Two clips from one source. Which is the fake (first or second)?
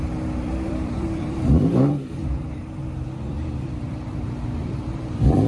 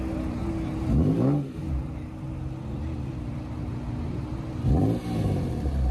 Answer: first